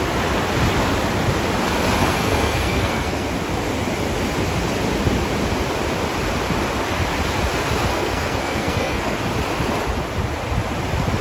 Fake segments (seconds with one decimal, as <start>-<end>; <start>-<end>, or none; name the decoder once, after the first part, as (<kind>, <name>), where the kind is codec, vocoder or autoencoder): 2.0-3.3 (codec, SNAC); 7.9-9.2